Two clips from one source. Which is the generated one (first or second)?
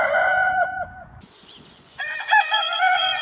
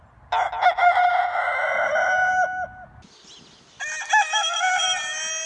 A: first